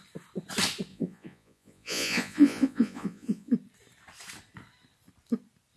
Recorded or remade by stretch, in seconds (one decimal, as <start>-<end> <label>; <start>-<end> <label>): 0.0-0.9 recorded; 0.9-3.5 remade; 3.5-5.8 recorded